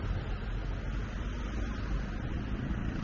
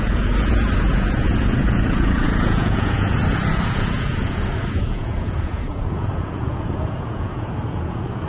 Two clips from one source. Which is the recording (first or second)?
first